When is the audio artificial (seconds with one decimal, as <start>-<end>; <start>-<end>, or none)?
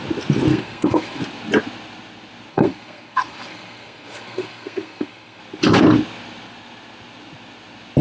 0.5-1.2; 2.5-5.4